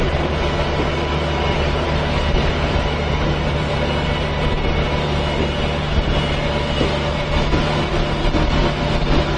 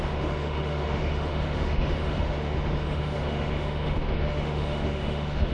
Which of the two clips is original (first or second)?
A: first